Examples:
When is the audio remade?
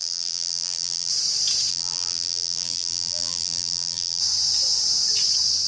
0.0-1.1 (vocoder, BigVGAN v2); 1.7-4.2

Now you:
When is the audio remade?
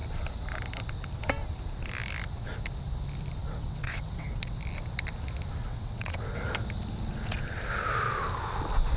3.4-4.6 (vocoder, WaveNeXt); 5.6-6.2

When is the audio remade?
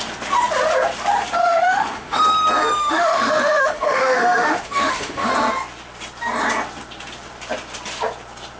1.4-2.2 (autoencoder, DAC-VAE); 2.8-5.3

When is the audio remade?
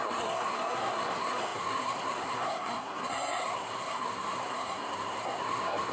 0.0-5.9 (codec, SNAC)